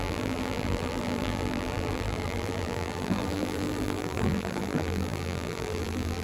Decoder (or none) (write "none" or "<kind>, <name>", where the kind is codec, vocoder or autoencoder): vocoder, BigVGAN v2